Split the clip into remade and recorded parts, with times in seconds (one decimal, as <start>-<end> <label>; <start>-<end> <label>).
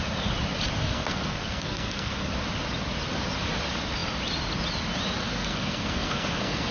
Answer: 0.0-0.8 recorded; 0.8-2.3 remade; 2.3-5.2 recorded; 5.2-6.7 remade